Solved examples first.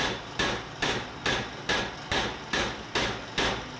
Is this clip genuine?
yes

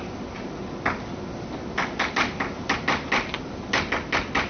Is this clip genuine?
yes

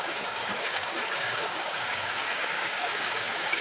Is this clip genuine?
no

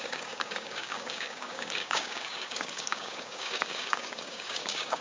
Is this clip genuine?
no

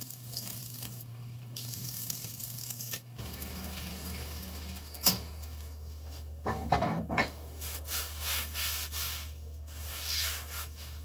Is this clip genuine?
no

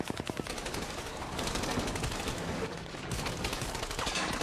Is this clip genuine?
no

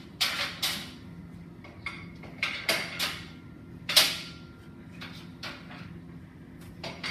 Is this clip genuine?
yes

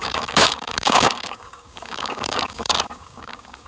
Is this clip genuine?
no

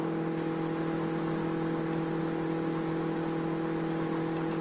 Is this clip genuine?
yes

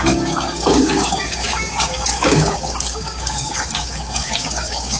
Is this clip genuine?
no